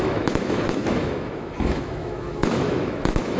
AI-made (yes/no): yes